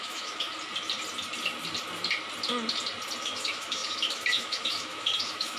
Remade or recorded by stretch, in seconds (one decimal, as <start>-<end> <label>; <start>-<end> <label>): 0.0-0.5 remade; 0.5-3.2 recorded; 3.2-5.6 remade